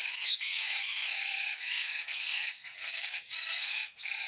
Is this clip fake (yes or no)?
yes